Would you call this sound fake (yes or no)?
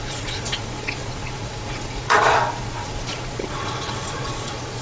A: yes